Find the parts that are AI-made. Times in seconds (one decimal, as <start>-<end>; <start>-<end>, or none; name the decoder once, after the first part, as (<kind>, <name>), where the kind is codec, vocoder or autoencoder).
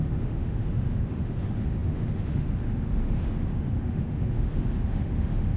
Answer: 0.0-5.6 (autoencoder, DAC-VAE)